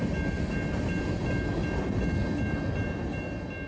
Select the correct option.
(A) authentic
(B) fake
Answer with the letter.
A